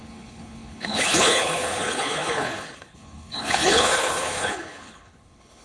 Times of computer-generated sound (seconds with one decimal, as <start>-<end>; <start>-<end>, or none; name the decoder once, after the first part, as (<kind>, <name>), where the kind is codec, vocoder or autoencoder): 0.0-5.6 (codec, HILCodec)